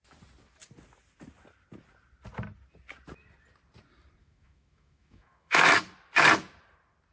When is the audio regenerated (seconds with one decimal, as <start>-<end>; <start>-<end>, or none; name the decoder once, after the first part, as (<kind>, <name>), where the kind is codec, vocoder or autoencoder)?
4.2-5.8 (autoencoder, DAC-VAE)